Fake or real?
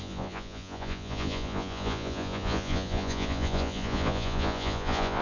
fake